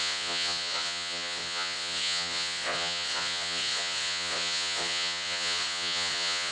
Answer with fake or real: fake